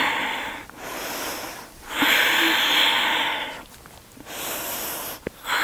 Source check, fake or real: real